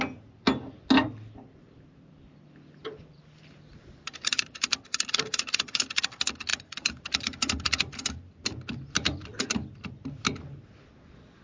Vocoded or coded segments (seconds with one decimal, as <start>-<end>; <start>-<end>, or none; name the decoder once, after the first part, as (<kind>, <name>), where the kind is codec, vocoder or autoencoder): 2.8-5.8 (vocoder, BigVGAN v2); 6.5-8.0